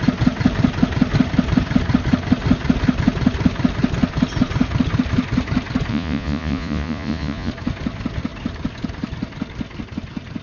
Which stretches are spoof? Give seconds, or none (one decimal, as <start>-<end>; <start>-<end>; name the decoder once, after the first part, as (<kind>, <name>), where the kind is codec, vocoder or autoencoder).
5.9-7.5 (vocoder, Vocos)